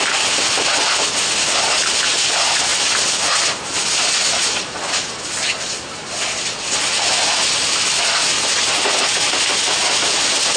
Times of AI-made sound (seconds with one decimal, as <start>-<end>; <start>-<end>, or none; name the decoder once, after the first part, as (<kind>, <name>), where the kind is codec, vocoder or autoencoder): none